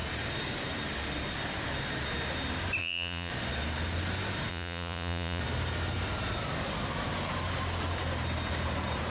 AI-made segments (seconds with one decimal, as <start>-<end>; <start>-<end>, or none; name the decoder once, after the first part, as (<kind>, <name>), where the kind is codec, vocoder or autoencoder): 2.8-3.3 (vocoder, Vocos); 4.5-5.4